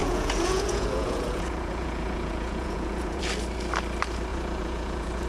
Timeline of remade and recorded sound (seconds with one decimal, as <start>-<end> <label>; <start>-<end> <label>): 0.0-3.2 remade; 3.2-4.3 recorded; 4.3-5.3 remade